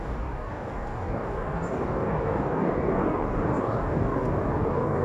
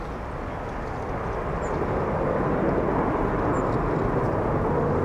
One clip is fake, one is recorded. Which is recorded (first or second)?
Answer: second